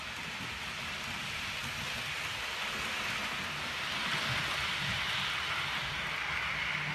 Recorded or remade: recorded